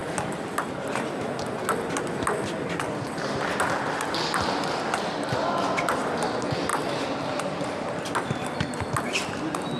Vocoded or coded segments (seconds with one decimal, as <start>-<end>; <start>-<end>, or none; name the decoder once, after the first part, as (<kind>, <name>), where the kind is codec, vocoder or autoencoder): 6.7-7.4 (vocoder, BigVGAN v2)